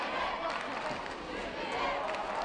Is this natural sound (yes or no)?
yes